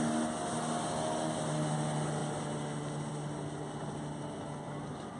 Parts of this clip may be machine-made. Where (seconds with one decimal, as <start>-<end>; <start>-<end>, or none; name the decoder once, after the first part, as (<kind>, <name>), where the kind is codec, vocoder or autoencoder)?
none